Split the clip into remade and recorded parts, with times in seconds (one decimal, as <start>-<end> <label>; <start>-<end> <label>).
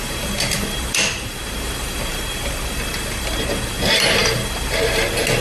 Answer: 0.0-5.4 recorded